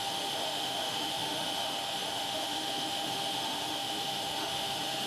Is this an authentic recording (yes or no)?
no